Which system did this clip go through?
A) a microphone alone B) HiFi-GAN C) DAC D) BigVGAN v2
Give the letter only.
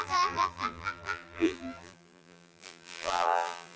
D